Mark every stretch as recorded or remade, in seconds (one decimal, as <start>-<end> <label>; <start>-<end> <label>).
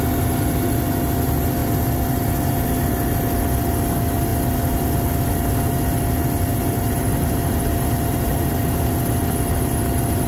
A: 0.0-6.5 recorded; 6.5-8.5 remade; 8.5-10.3 recorded